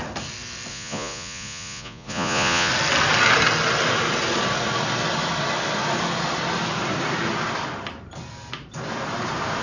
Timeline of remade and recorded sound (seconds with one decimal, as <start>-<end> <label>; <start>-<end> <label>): 0.0-0.7 recorded; 0.7-2.7 remade; 2.7-9.6 recorded